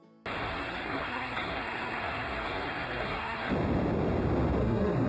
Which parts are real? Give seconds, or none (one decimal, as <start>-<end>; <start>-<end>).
0.0-0.4; 3.5-4.6